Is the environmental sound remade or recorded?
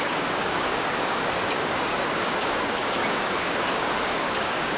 remade